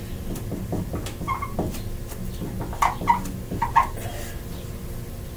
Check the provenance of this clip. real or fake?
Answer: real